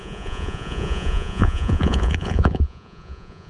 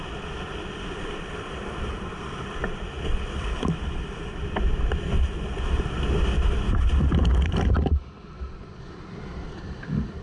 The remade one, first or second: first